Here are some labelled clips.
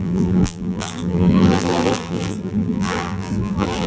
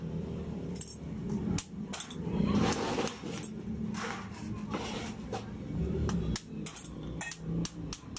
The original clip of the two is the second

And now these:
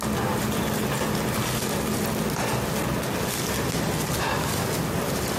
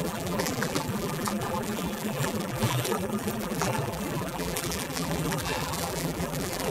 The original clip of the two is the first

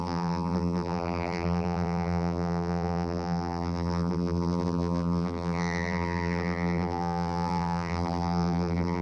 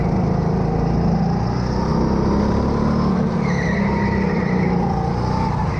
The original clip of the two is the second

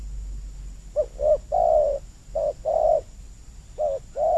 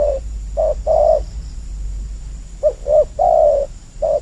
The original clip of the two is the first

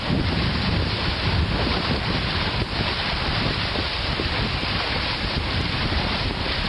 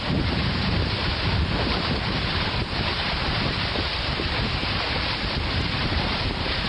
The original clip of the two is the first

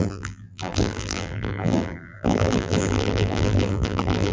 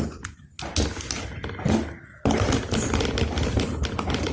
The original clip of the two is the second